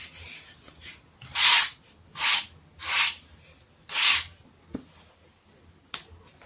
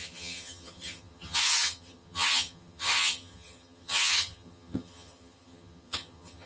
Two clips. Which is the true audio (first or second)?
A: first